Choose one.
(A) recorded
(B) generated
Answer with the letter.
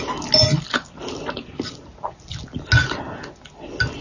A